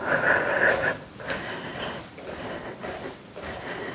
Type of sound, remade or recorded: recorded